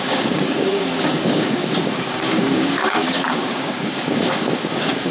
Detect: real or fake fake